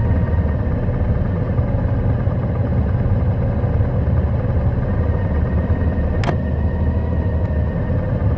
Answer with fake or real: real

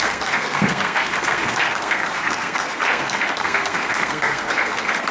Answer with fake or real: fake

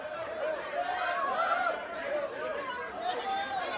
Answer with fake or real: fake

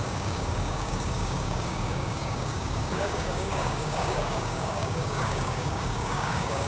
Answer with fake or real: fake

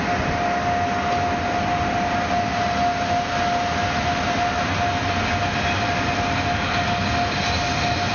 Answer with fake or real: real